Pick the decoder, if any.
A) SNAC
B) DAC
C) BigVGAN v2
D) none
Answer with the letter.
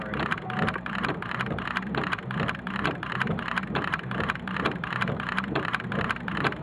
C